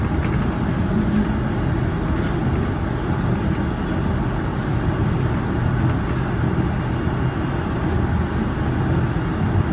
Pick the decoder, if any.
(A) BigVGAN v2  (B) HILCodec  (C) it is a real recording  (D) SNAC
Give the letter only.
C